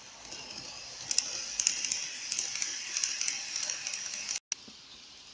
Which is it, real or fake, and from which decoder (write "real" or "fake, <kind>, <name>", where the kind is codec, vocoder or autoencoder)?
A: real